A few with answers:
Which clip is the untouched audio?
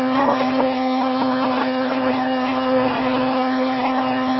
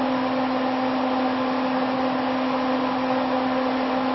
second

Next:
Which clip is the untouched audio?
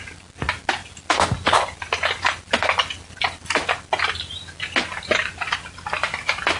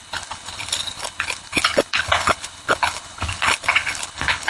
first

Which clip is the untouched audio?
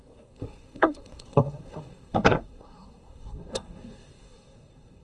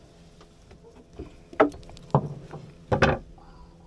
second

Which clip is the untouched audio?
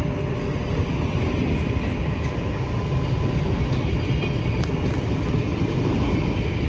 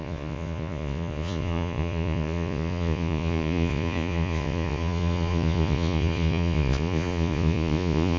first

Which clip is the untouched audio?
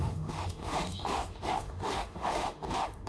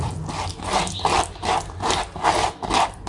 second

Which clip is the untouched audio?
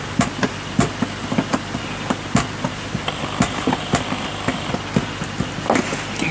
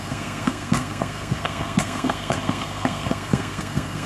first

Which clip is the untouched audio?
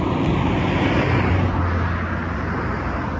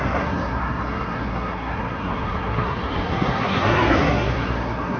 first